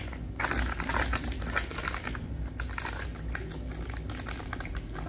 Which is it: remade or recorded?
recorded